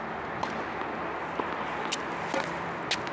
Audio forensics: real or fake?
real